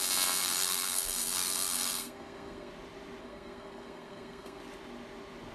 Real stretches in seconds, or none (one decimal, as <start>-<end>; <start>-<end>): 0.0-0.4; 2.7-3.2; 4.6-5.5